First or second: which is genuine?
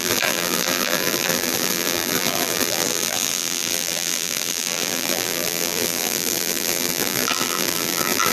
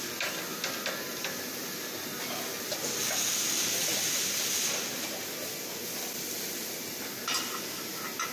second